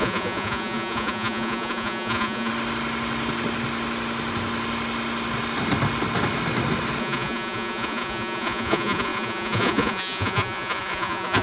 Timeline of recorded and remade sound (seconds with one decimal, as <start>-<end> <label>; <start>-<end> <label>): 0.0-2.5 remade; 2.5-7.0 recorded; 7.0-11.4 remade

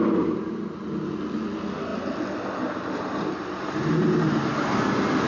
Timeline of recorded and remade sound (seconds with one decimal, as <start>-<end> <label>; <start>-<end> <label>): 0.0-5.3 recorded